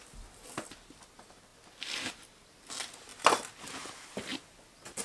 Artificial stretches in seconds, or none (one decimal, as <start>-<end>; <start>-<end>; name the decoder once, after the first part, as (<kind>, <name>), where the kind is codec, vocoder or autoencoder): 4.3-5.0 (vocoder, BigVGAN v2)